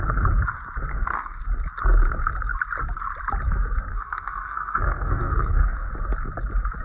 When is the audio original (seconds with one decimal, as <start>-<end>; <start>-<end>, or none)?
0.0-0.9; 1.4-3.9; 5.9-6.8